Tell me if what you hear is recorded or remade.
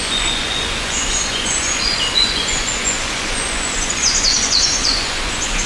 remade